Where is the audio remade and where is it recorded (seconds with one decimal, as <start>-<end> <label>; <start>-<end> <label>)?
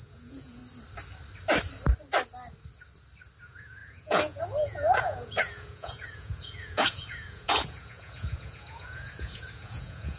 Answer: 0.0-0.6 remade; 0.6-3.4 recorded; 3.4-10.2 remade